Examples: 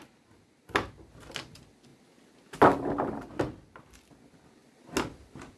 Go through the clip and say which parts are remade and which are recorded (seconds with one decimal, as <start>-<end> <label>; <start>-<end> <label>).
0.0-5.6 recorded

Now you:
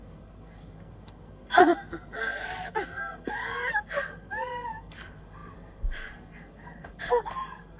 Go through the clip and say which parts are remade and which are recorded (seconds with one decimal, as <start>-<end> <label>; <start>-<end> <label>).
0.0-7.8 remade

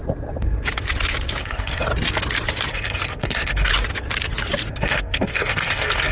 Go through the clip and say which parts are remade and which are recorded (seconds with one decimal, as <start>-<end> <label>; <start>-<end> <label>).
0.0-1.4 recorded; 1.4-1.9 remade; 1.9-2.7 recorded; 2.7-3.7 remade; 3.7-4.7 recorded; 4.7-6.1 remade